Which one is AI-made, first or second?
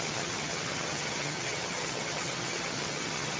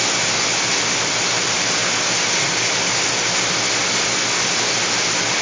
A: first